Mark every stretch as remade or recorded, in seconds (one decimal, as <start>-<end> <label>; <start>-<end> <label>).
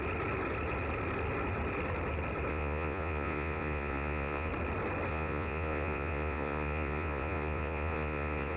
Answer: 0.0-2.5 recorded; 2.5-4.5 remade; 4.5-5.1 recorded; 5.1-8.6 remade